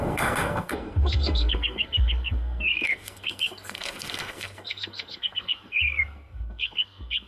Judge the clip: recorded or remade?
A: remade